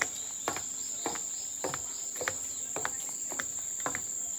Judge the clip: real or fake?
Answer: real